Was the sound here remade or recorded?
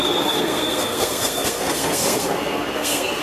remade